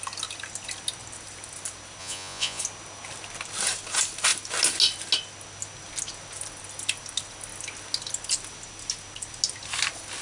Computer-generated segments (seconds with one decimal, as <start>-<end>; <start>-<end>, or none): 2.0-2.6